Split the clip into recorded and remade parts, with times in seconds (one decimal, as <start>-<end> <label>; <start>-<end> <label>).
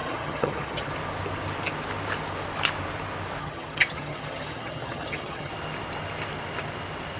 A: 0.0-0.9 remade; 0.9-3.4 recorded; 3.4-5.5 remade; 5.5-7.2 recorded